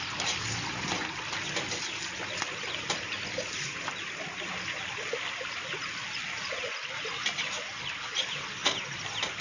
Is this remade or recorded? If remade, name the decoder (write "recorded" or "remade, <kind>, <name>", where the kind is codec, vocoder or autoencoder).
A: recorded